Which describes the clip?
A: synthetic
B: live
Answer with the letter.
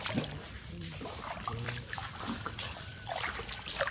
A